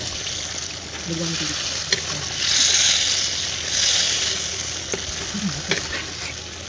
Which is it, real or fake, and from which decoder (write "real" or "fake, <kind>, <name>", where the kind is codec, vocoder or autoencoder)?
real